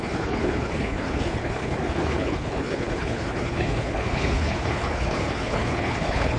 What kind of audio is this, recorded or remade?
remade